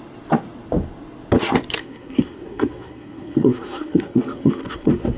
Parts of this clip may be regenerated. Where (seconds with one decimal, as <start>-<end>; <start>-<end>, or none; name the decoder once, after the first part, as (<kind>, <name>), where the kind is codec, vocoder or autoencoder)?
1.8-5.2 (codec, SNAC)